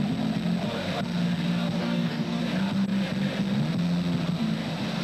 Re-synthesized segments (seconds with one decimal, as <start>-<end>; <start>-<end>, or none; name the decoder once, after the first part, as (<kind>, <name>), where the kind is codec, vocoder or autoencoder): 1.8-2.4 (codec, DAC)